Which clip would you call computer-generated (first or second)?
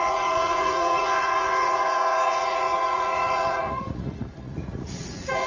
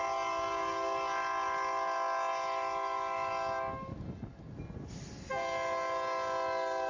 first